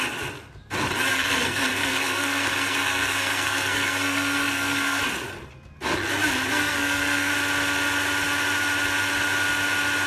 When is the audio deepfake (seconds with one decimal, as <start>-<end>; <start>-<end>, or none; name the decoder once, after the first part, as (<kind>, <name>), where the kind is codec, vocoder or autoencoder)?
1.1-5.0 (codec, SNAC); 6.5-7.3